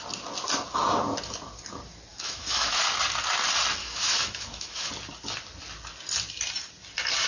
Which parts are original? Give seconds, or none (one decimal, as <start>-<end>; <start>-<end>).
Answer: 0.0-2.1; 2.8-3.8; 4.9-7.3